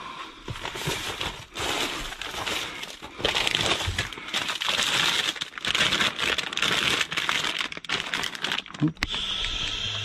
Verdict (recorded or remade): recorded